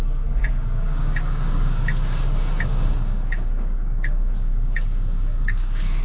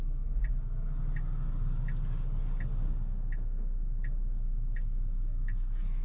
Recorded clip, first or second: second